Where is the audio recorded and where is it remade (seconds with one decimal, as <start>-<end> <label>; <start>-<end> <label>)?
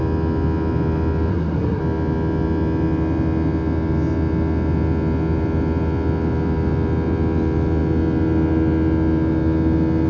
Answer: 0.0-1.3 recorded; 1.3-1.8 remade; 1.8-10.1 recorded